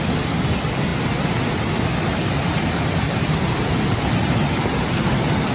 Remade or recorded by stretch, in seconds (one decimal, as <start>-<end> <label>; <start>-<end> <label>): 0.0-5.5 recorded